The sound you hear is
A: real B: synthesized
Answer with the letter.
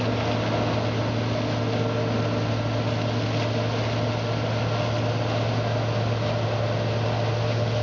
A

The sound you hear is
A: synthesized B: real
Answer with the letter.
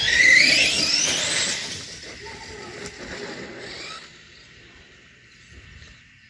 B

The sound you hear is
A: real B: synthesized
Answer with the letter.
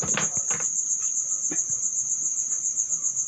A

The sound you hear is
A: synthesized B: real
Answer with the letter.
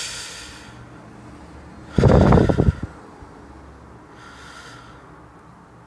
B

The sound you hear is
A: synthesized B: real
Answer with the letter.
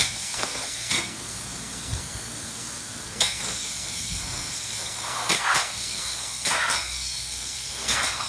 A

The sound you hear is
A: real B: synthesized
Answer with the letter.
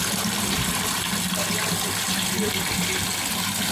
A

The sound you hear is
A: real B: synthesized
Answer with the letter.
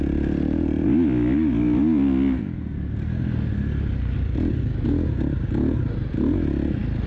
A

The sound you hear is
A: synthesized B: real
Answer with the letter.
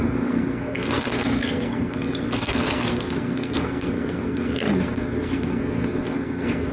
A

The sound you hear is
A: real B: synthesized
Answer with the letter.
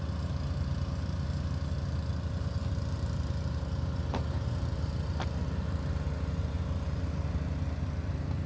A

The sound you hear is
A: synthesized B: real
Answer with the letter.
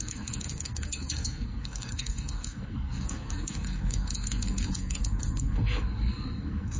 A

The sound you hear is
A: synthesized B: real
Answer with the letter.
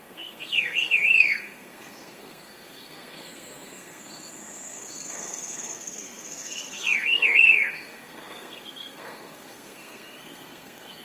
A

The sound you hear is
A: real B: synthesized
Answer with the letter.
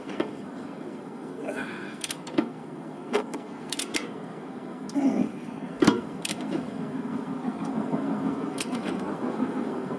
B